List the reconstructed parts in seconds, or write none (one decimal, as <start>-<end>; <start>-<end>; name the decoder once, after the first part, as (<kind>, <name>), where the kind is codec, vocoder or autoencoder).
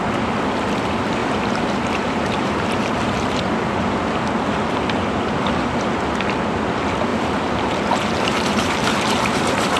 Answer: 1.2-2.9 (vocoder, BigVGAN v2); 7.1-8.9